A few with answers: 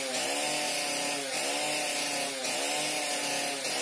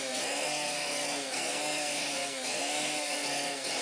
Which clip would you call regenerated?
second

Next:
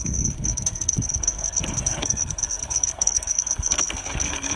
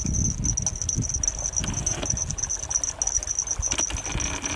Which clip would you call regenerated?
first